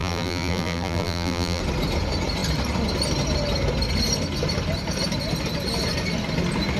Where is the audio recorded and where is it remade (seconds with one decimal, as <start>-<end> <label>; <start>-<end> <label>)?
0.0-1.6 remade; 1.6-6.8 recorded